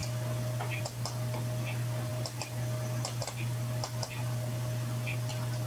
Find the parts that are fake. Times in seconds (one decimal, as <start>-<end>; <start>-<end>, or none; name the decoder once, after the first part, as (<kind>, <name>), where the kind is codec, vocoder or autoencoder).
0.0-0.8 (vocoder, BigVGAN v2); 2.1-5.3